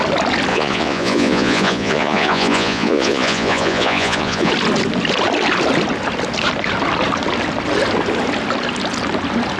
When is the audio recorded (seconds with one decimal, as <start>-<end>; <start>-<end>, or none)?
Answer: 0.0-0.5; 4.5-9.6